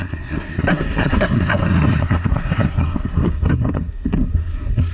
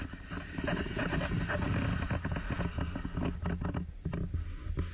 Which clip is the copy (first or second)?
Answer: first